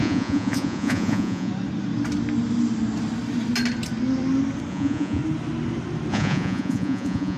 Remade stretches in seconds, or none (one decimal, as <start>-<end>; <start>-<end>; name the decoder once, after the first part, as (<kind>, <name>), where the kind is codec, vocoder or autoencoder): 0.0-1.5 (vocoder, Vocos); 4.7-5.2; 6.1-7.4